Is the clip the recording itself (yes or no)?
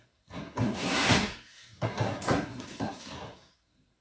no